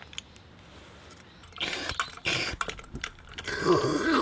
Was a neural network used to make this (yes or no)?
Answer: no